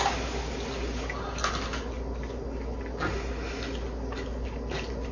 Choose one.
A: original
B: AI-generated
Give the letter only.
A